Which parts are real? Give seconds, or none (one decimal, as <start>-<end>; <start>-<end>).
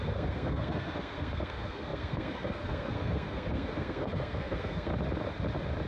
4.9-5.9